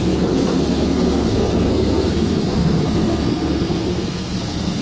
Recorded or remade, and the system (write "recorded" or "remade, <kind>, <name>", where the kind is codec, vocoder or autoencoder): remade, codec, SNAC